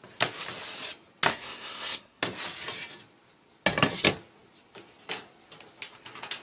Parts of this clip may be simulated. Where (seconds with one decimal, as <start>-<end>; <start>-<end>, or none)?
1.3-2.2